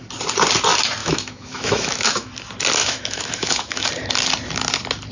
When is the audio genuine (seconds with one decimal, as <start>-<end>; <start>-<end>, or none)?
0.0-1.0; 2.3-2.8; 3.9-5.1